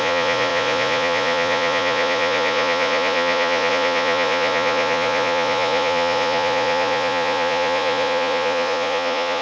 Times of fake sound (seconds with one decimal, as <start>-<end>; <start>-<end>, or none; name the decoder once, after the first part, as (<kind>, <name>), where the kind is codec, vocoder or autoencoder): 0.0-9.4 (vocoder, Vocos)